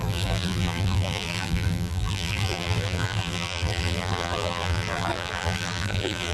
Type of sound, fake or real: fake